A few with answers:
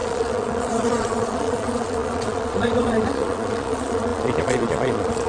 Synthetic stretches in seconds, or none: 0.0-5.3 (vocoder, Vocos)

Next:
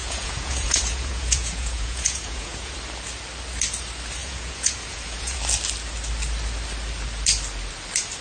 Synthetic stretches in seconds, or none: 0.0-2.8 (vocoder, Vocos); 4.2-5.4